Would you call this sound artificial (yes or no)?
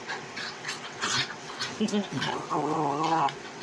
yes